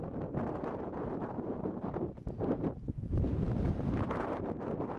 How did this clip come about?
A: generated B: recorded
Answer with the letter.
A